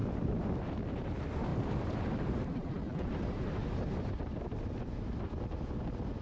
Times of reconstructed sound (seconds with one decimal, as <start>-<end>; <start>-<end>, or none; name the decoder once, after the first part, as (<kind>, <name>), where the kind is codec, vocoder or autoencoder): 0.0-0.5 (vocoder, BigVGAN v2); 1.5-5.2